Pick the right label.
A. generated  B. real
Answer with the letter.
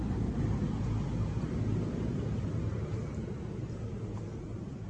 B